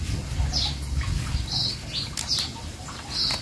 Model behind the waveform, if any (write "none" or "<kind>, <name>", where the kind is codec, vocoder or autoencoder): none